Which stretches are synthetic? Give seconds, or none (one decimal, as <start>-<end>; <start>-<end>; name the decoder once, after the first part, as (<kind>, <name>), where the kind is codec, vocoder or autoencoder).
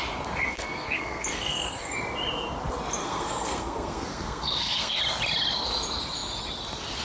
0.5-1.9 (codec, SNAC); 3.0-5.0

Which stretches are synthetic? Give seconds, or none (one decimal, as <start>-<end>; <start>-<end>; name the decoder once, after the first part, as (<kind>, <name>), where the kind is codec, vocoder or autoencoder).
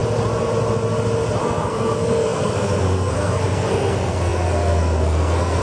1.4-5.6 (codec, SNAC)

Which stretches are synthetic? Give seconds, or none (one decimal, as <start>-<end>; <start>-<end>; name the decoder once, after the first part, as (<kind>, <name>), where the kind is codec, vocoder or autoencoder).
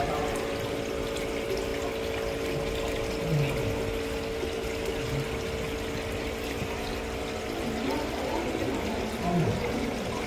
none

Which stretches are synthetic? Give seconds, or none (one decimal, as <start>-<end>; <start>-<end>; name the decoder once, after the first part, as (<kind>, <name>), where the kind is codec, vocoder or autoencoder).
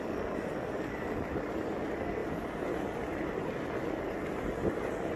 none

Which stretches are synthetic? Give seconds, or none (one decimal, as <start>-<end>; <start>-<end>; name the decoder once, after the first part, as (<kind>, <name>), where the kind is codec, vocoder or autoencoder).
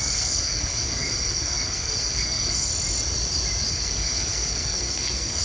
0.0-2.7 (codec, SNAC); 3.7-5.4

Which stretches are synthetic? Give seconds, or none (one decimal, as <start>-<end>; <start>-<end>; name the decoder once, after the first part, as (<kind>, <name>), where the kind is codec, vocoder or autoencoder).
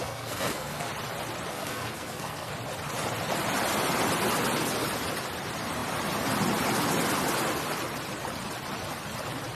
0.0-0.9 (codec, SNAC); 1.5-2.5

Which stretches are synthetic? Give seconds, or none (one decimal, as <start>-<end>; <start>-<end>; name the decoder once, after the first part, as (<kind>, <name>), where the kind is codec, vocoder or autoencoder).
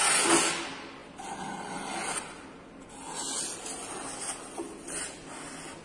none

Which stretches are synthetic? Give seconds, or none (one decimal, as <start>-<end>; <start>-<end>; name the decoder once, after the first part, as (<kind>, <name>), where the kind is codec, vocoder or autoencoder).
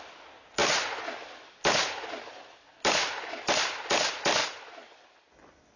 none